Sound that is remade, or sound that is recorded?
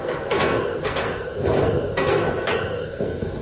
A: remade